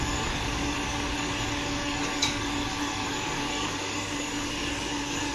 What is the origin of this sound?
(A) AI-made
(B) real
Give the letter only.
A